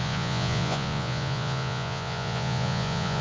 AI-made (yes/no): yes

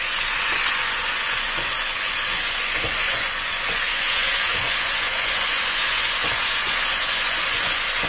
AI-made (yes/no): yes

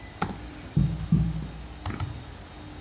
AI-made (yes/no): no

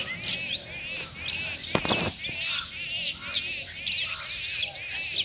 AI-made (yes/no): no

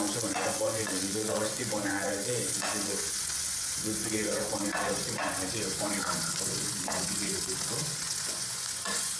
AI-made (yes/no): yes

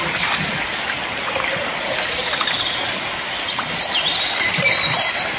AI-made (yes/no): no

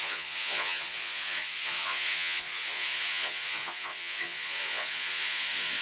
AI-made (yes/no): yes